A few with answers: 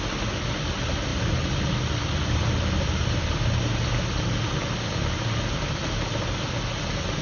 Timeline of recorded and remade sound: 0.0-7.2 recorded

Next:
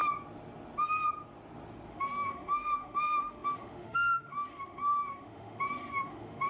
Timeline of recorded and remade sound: 0.0-1.9 recorded; 1.9-6.5 remade

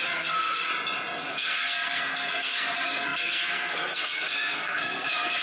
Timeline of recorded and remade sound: 0.0-0.7 remade; 0.7-1.3 recorded; 1.3-5.4 remade

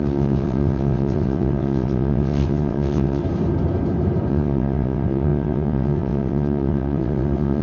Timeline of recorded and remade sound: 0.0-3.2 remade; 3.2-4.3 recorded; 4.3-7.6 remade

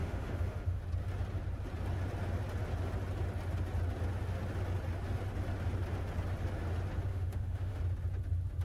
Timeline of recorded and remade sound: 0.0-0.8 remade; 0.8-7.1 recorded; 7.1-7.8 remade; 7.8-8.6 recorded

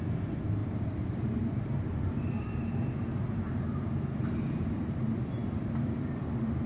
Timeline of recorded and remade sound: 0.0-6.7 remade